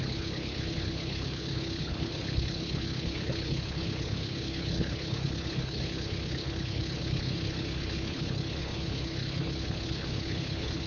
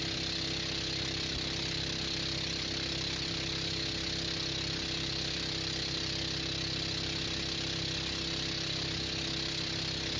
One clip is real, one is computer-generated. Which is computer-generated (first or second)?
first